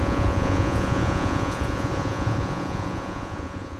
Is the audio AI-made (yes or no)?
yes